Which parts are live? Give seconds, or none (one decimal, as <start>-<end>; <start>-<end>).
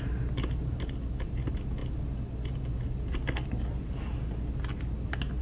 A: 0.0-5.4